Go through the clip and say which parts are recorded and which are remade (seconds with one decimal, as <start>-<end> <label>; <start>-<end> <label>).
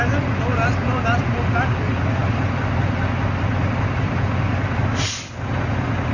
0.0-6.1 recorded